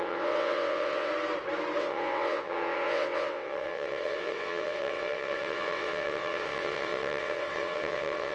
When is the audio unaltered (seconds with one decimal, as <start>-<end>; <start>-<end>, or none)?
1.1-1.8